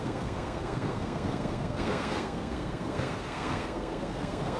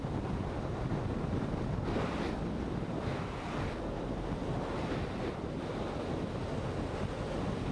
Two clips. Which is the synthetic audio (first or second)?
first